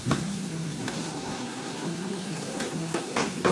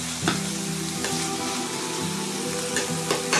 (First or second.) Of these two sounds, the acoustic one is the second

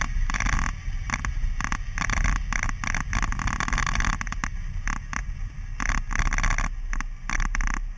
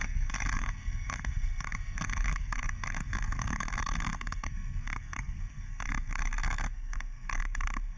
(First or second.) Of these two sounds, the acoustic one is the first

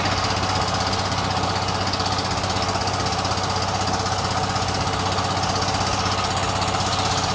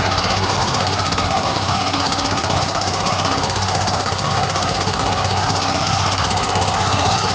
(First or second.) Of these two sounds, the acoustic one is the first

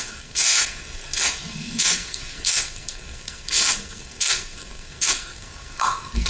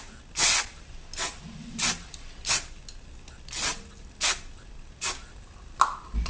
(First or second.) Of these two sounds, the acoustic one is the second